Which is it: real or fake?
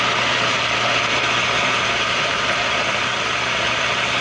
fake